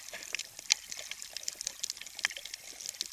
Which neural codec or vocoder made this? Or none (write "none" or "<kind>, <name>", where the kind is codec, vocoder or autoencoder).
none